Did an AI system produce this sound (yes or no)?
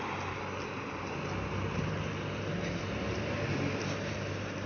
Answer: no